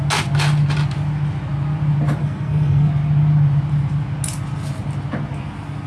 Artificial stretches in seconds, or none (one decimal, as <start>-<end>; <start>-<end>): 2.2-2.9